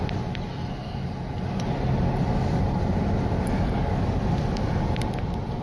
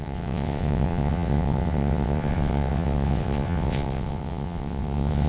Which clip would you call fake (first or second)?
second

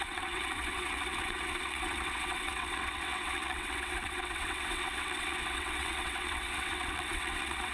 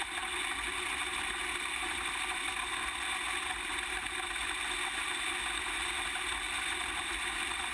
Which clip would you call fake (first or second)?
first